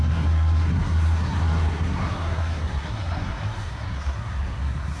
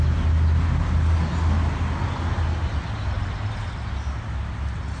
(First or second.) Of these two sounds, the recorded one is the second